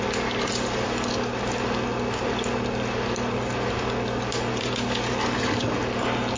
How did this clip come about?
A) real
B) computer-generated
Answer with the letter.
A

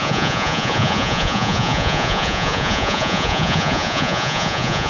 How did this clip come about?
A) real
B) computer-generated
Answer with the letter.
B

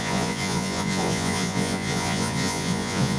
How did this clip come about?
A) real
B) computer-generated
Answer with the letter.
B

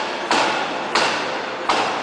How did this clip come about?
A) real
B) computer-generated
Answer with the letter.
A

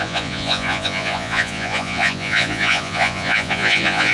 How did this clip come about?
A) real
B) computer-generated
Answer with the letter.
B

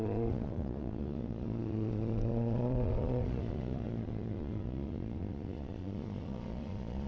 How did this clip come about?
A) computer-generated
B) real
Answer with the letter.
A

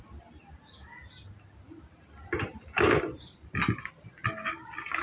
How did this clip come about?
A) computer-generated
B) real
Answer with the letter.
B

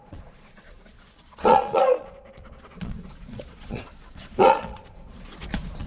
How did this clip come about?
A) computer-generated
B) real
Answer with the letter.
A